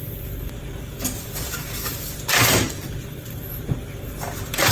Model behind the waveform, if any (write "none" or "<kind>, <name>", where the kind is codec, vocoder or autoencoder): vocoder, BigVGAN v2